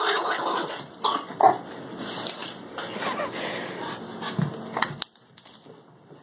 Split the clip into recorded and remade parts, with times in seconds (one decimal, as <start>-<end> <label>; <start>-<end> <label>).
0.0-6.2 recorded